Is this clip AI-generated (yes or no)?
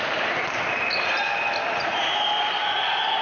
no